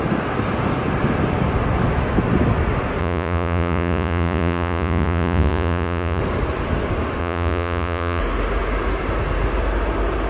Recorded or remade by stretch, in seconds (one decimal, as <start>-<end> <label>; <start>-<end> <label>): 0.0-3.0 recorded; 3.0-6.2 remade; 6.2-7.2 recorded; 7.2-8.2 remade; 8.2-10.3 recorded